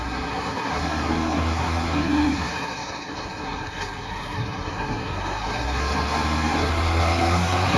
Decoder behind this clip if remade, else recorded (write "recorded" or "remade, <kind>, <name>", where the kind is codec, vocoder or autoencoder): remade, codec, SNAC